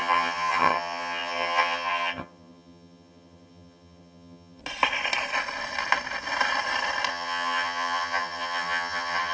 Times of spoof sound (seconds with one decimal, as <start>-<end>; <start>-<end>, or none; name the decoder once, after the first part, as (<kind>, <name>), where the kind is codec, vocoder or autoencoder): 0.0-4.6 (vocoder, HiFi-GAN); 7.1-9.3